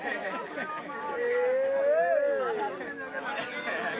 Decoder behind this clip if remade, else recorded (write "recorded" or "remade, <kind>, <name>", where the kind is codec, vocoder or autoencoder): recorded